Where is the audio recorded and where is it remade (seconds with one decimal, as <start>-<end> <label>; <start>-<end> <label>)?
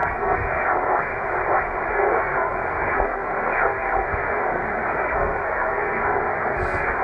0.0-1.1 remade; 1.1-1.9 recorded; 1.9-7.0 remade